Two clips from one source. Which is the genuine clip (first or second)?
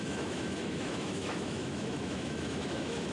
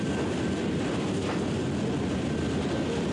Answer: second